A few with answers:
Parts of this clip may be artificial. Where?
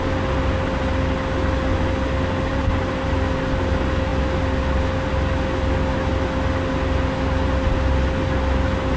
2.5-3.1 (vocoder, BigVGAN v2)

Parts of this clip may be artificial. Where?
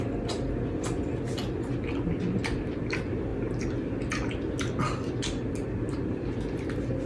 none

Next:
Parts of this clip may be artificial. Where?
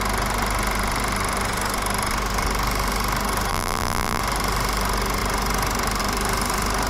3.5-4.2 (vocoder, BigVGAN v2)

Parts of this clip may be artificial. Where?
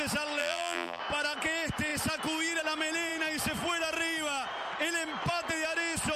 0.4-1.0 (vocoder, BigVGAN v2)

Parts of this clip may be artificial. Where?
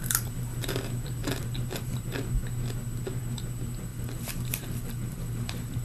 1.2-1.9 (vocoder, BigVGAN v2); 3.9-5.8